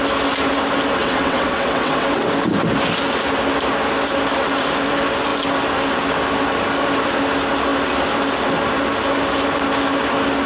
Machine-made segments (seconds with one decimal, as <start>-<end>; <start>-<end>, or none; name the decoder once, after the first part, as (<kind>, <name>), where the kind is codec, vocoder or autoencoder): 1.0-2.2 (vocoder, WaveNeXt)